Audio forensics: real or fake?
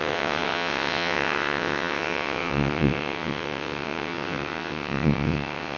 fake